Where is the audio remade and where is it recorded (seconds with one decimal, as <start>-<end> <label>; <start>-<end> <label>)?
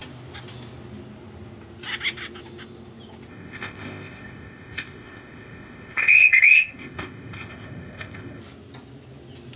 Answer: 0.0-3.3 recorded; 3.3-8.4 remade; 8.4-9.6 recorded